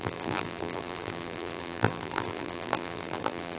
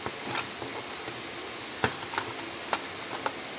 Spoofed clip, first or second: first